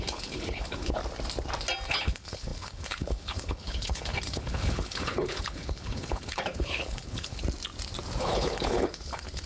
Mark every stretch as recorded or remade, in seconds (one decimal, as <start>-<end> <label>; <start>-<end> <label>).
0.0-1.0 remade; 1.0-1.9 recorded; 1.9-7.4 remade; 7.4-8.2 recorded; 8.2-9.5 remade

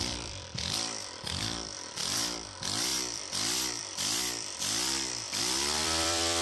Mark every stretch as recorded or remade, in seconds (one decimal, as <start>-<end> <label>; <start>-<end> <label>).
0.0-6.4 remade

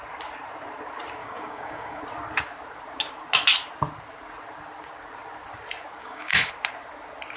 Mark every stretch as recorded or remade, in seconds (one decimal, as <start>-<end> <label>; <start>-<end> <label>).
0.0-1.2 recorded; 1.2-2.0 remade; 2.0-6.0 recorded; 6.0-6.5 remade; 6.5-7.4 recorded